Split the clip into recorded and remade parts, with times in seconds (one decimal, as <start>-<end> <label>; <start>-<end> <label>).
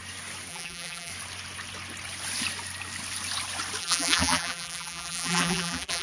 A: 0.0-0.5 recorded; 0.5-1.1 remade; 1.1-3.8 recorded; 3.8-6.0 remade